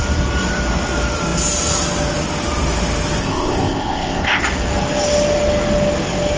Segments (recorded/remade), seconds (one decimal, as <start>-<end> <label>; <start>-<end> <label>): 0.0-3.2 recorded; 3.2-4.4 remade; 4.4-6.4 recorded